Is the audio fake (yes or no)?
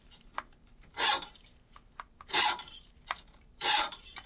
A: yes